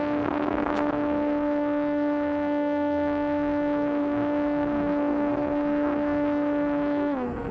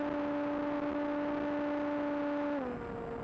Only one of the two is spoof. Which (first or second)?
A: first